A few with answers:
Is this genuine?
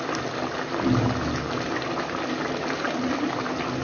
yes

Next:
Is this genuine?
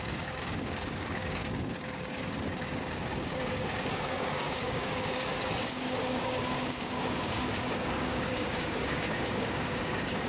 no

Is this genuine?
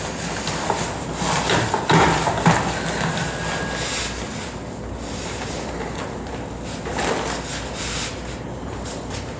yes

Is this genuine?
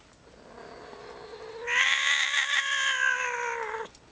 yes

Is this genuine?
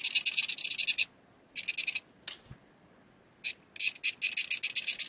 yes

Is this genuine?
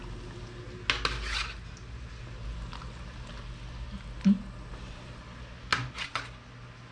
yes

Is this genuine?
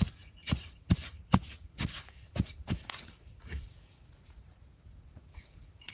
no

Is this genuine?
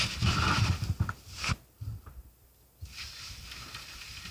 yes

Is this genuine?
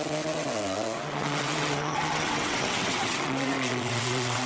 no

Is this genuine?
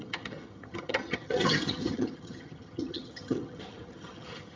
no